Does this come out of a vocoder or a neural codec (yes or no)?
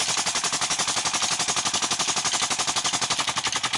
no